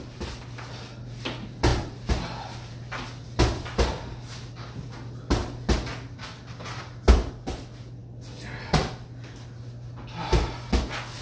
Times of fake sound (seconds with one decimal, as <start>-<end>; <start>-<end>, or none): none